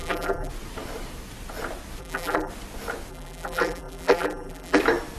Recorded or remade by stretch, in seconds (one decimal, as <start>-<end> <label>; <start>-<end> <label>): 0.0-0.5 remade; 0.5-2.0 recorded; 2.0-2.5 remade; 2.5-3.1 recorded; 3.1-4.8 remade; 4.8-5.2 recorded